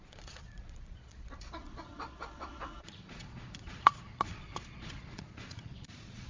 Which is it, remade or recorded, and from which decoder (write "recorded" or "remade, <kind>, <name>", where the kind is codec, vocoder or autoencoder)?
remade, vocoder, Vocos